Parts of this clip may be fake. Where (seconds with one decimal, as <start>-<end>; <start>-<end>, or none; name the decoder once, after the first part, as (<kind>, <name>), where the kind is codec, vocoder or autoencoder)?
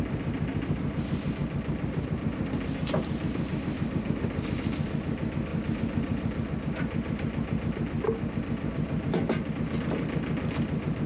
none